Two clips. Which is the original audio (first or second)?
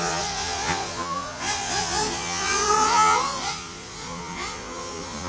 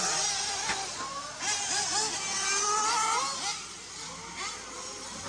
second